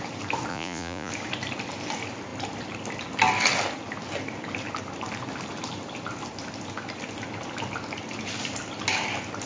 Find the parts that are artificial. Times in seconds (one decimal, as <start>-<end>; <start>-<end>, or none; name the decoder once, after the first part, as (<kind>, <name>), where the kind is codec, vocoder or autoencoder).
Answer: 0.5-1.1 (vocoder, Vocos)